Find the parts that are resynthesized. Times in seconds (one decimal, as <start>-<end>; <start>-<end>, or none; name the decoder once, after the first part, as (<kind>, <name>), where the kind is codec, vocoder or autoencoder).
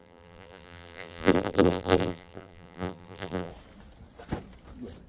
0.0-3.5 (vocoder, BigVGAN v2)